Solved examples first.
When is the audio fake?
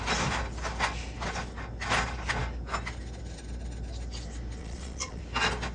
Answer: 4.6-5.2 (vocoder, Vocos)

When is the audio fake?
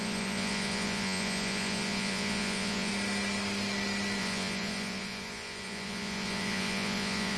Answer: 0.0-2.9 (vocoder, Vocos); 4.2-7.4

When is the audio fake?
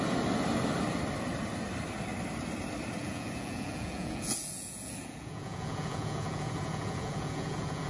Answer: 3.0-7.9 (vocoder, Vocos)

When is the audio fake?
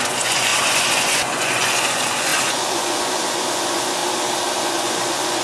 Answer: 0.0-4.0 (vocoder, Vocos); 4.6-5.4